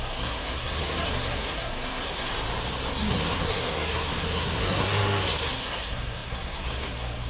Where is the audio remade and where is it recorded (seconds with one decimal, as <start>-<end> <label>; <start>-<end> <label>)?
0.0-2.3 remade; 2.3-2.9 recorded; 2.9-7.3 remade